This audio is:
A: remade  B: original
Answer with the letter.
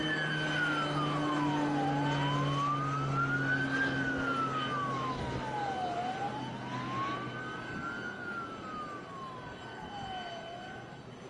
B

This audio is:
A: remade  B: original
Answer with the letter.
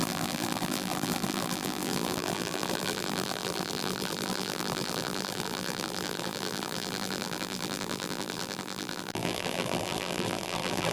A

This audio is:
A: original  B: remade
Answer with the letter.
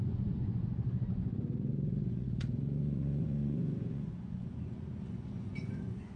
B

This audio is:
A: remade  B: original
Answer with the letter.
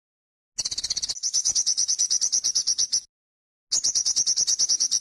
B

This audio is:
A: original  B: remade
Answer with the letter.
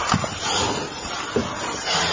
A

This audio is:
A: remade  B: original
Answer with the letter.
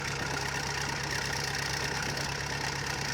B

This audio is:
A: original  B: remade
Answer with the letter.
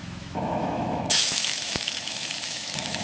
B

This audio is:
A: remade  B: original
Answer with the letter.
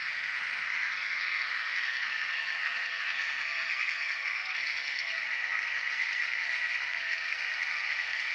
A